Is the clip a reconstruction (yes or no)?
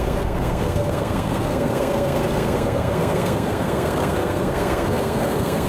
yes